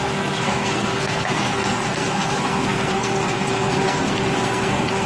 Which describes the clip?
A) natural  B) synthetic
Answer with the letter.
B